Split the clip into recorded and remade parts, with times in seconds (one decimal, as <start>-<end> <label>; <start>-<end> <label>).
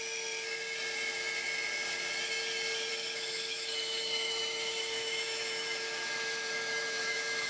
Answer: 0.0-2.9 recorded; 2.9-7.5 remade